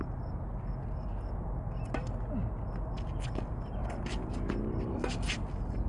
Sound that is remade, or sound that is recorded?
recorded